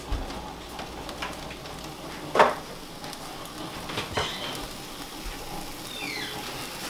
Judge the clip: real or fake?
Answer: real